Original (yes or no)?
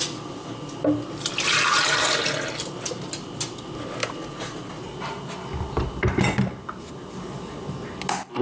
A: yes